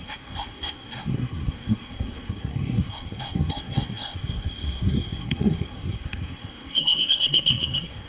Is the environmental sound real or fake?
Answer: fake